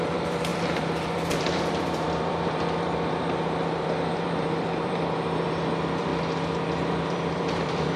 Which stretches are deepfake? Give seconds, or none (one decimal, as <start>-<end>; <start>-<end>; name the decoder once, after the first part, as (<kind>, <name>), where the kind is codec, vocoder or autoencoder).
0.0-6.1 (vocoder, BigVGAN v2); 6.9-8.0